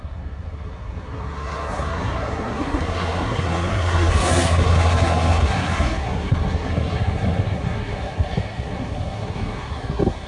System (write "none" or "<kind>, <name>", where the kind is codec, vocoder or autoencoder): codec, SNAC